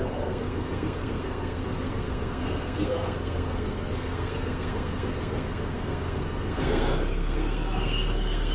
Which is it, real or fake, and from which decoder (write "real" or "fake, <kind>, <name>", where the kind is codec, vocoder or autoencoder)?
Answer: fake, codec, SNAC